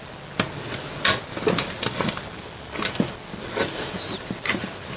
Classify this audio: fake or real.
real